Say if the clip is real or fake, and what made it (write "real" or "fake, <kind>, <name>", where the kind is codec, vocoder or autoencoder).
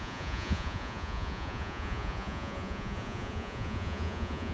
fake, vocoder, Vocos